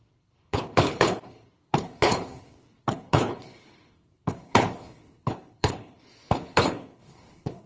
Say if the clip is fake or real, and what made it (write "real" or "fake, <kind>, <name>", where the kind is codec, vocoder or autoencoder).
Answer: fake, codec, HILCodec